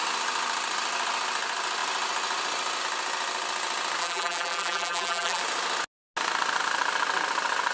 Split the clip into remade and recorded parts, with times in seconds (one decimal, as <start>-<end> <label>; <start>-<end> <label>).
0.0-4.0 recorded; 4.0-5.4 remade; 5.4-7.7 recorded